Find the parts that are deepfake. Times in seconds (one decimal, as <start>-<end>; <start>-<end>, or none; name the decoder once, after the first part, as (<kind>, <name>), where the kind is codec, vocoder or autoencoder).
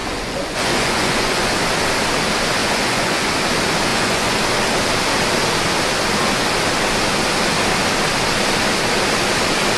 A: 0.0-1.5 (vocoder, Vocos); 2.6-3.3; 3.9-4.4